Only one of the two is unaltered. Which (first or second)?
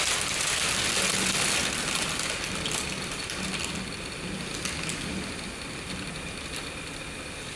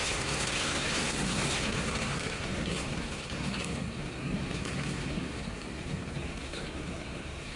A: first